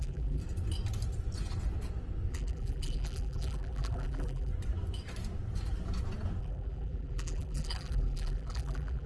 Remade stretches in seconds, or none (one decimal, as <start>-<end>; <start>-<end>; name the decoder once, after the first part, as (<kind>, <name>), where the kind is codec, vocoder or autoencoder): 0.0-0.4 (vocoder, BigVGAN v2); 2.3-4.5; 6.4-9.1

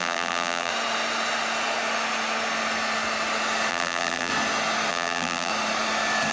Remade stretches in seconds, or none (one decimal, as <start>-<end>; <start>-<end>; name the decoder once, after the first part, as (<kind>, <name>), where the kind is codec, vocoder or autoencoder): 0.0-0.7 (vocoder, BigVGAN v2); 3.7-4.3; 4.9-5.5